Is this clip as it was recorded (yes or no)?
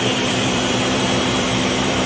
no